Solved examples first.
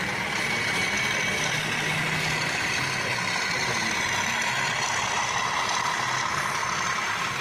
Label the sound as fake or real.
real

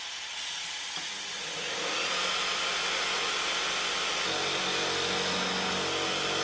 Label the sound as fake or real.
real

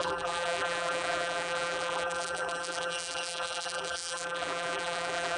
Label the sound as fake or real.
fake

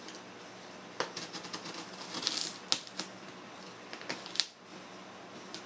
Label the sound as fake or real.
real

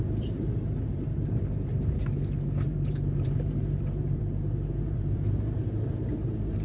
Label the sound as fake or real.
fake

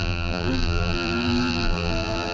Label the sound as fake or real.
fake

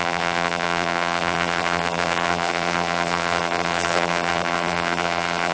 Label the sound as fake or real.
fake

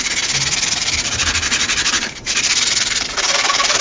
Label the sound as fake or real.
fake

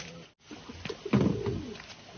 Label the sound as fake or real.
real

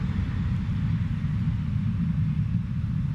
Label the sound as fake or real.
real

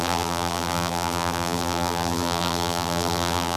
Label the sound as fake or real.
fake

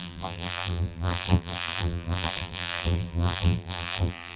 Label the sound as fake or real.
fake